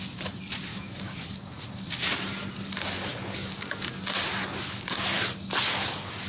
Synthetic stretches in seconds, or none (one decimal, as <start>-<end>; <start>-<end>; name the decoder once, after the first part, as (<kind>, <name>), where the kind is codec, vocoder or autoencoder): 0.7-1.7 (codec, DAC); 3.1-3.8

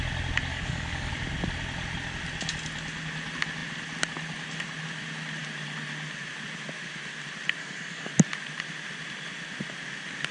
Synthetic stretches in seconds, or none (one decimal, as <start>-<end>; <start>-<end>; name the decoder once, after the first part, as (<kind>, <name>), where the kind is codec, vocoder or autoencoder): 0.5-1.1 (codec, DAC); 7.6-8.1

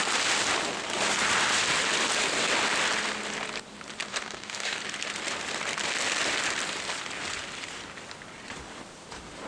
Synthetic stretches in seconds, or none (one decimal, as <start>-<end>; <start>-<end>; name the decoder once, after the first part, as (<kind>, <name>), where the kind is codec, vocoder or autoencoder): 4.1-4.8 (codec, DAC)

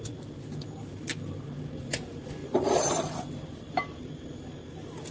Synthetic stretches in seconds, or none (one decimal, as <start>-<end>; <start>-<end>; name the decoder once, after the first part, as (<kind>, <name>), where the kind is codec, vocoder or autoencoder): none